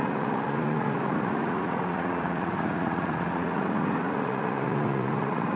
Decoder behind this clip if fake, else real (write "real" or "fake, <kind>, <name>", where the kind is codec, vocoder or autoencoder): fake, vocoder, Vocos